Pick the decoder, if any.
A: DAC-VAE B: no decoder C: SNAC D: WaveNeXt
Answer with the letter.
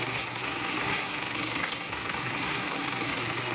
C